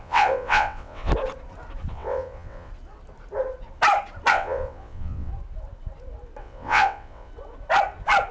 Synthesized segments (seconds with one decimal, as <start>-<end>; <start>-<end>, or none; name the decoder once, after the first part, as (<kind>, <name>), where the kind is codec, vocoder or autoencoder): 0.0-1.1 (vocoder, WaveNeXt); 1.9-2.7; 4.3-5.3; 6.4-7.3